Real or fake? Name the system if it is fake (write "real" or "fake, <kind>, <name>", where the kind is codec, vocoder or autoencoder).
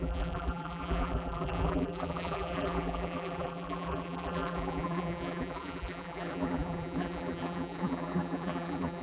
fake, vocoder, BigVGAN v2